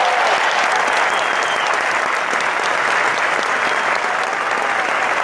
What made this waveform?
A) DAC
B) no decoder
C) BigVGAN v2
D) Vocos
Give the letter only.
B